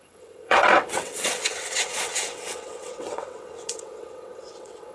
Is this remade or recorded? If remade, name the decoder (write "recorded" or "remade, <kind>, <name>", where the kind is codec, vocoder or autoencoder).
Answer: remade, vocoder, WaveNeXt